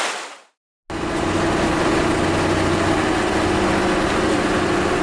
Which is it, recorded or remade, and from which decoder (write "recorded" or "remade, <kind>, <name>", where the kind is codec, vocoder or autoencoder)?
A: recorded